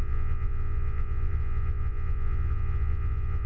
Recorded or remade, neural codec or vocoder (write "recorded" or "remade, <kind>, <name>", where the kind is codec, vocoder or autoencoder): remade, vocoder, Vocos